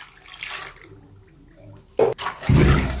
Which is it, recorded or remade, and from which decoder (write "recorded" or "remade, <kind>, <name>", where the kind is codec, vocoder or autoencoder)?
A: recorded